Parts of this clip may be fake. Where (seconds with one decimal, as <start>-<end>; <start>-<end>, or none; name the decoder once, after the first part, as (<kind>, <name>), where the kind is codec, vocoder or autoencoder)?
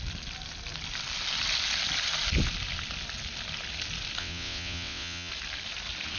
4.2-5.3 (vocoder, WaveNeXt)